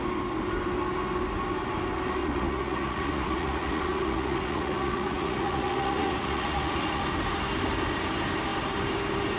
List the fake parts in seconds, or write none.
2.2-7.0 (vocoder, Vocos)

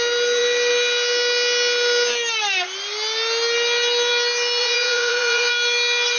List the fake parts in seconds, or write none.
4.6-5.5 (vocoder, Vocos)

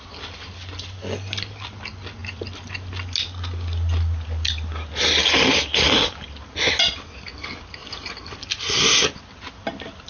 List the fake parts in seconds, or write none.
none

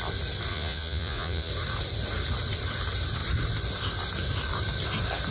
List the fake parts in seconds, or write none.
0.5-1.5 (vocoder, Vocos)

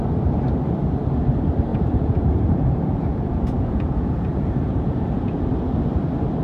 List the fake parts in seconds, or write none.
1.7-5.5 (vocoder, Vocos)

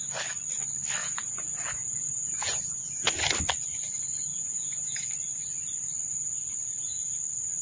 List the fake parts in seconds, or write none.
1.0-3.1 (vocoder, Vocos); 4.3-5.1